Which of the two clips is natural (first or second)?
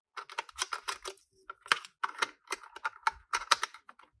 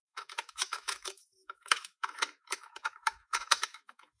first